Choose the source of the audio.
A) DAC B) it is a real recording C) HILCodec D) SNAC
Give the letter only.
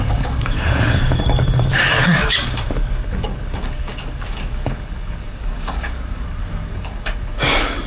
A